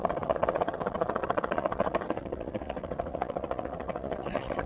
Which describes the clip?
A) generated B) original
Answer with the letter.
A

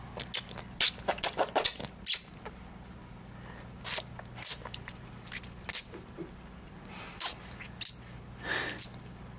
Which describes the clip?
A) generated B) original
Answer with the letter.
B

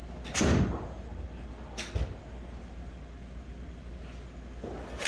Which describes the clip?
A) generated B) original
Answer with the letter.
B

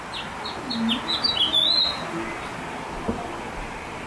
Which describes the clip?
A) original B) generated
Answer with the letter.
A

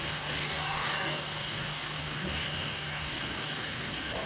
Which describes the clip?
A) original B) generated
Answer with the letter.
B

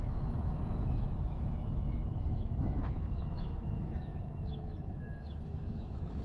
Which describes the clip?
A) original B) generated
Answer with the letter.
B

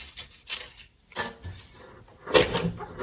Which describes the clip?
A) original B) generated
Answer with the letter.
A